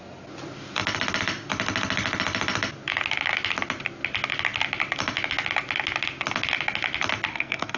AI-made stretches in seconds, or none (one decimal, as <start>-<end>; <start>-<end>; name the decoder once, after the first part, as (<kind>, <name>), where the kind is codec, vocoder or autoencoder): 7.3-7.8 (codec, SNAC)